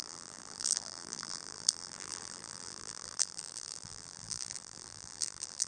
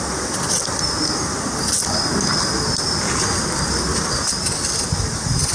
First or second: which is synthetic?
first